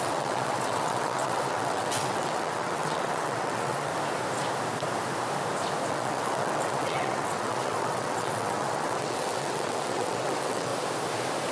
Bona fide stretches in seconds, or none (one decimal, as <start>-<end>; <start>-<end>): 3.9-5.9; 10.7-11.5

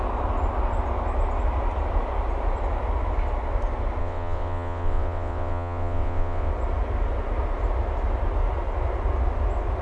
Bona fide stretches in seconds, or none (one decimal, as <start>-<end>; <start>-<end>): 0.0-4.0; 6.5-9.8

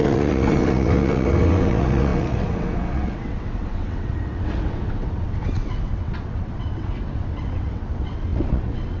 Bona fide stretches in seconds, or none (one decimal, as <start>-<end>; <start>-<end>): none

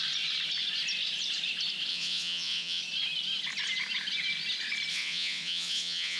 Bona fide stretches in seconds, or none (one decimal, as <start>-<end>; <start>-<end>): 0.0-1.9; 2.8-4.9

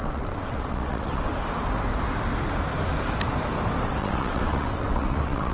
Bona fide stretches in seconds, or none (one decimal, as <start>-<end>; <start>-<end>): 1.3-4.0

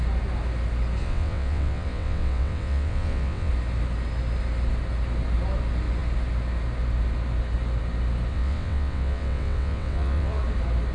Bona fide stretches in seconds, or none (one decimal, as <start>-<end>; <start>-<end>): 0.0-1.0; 3.5-8.3; 10.4-10.9

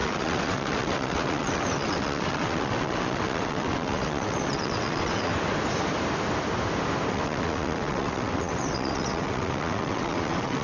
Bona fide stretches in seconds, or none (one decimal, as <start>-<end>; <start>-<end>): 5.3-7.1